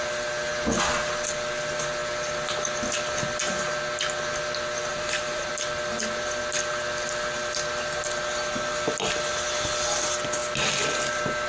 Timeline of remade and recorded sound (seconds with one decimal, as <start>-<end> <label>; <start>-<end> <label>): 0.0-4.9 recorded; 4.9-5.5 remade; 5.5-11.5 recorded